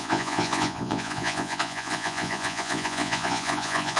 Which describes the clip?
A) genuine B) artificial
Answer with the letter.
B